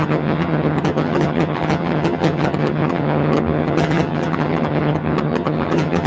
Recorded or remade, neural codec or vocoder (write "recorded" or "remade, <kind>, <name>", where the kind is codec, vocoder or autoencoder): remade, vocoder, HiFi-GAN